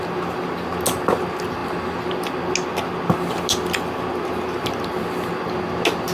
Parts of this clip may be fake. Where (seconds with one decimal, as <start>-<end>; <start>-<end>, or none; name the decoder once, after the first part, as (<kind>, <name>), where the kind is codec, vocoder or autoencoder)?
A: none